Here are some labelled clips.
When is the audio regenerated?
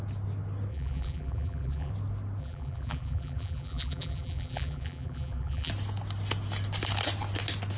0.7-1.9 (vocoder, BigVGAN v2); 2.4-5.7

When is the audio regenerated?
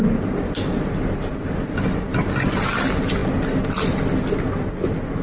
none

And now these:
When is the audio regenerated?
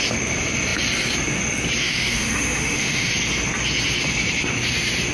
1.8-3.1 (autoencoder, DAC-VAE)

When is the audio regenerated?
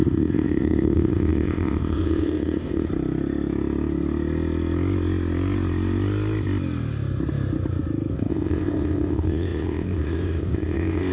0.0-2.9 (codec, ZipCodec); 8.1-11.1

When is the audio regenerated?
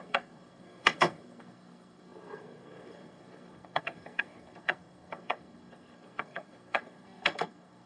0.0-7.9 (codec, SNAC)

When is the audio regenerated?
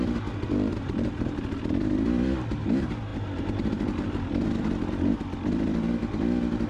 0.7-1.4 (vocoder, BigVGAN v2)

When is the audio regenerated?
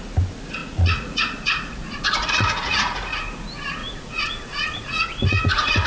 0.6-3.2 (vocoder, Vocos); 3.8-5.9